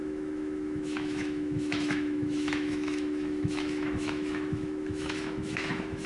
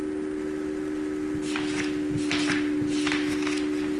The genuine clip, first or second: second